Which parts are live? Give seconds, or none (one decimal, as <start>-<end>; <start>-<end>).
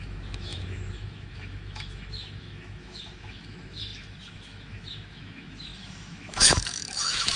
none